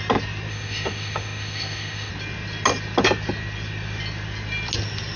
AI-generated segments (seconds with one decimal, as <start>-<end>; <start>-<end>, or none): 0.5-2.1